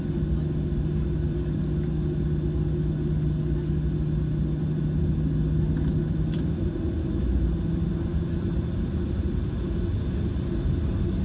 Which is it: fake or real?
real